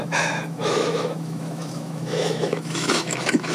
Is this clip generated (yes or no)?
yes